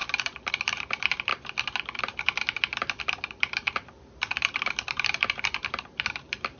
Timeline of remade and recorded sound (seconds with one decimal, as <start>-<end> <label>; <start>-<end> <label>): 0.0-0.5 recorded; 0.5-1.3 remade; 1.3-2.0 recorded; 2.0-6.6 remade